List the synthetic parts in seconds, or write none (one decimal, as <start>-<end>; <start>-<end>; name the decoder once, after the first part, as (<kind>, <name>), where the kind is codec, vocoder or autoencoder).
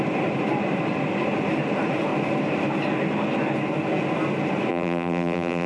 4.7-5.7 (vocoder, BigVGAN v2)